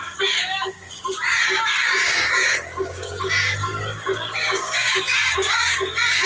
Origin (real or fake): fake